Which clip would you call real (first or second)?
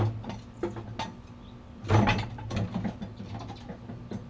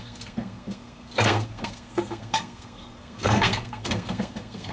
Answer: first